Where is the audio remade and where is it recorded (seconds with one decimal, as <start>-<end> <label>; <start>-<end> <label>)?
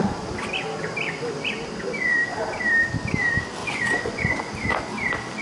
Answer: 0.0-3.6 recorded; 3.6-4.5 remade; 4.5-5.4 recorded